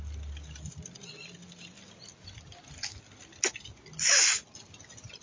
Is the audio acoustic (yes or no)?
yes